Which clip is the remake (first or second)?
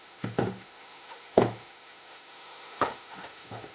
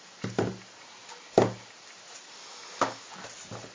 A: first